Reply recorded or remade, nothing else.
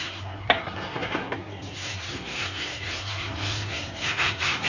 remade